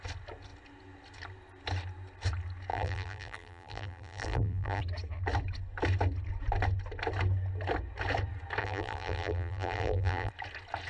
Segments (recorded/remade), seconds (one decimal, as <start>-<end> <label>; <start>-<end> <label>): 0.0-2.7 recorded; 2.7-4.8 remade; 4.8-8.6 recorded; 8.6-10.3 remade; 10.3-10.9 recorded